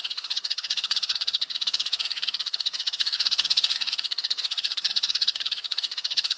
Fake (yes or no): yes